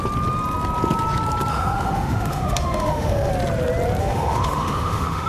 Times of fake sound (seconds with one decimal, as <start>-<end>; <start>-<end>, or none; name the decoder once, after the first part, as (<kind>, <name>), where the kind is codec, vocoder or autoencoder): 1.5-3.3 (autoencoder, DAC-VAE); 4.0-5.3